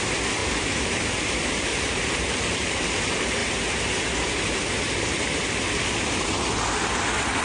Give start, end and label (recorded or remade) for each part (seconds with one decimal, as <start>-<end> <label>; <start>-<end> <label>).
0.0-3.4 remade; 3.4-4.4 recorded; 4.4-7.4 remade